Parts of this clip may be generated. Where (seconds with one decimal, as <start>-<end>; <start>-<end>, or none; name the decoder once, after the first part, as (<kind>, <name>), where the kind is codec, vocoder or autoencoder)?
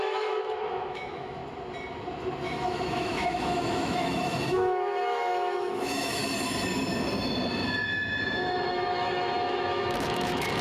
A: 0.0-1.4 (autoencoder, DAC-VAE); 2.4-6.2; 7.9-10.6